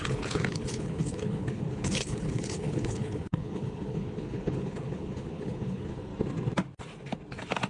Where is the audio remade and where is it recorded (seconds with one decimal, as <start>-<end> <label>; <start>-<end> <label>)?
0.0-6.1 remade; 6.1-7.7 recorded